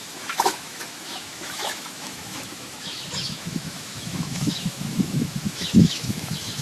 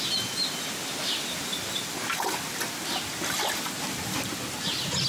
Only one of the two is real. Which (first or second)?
second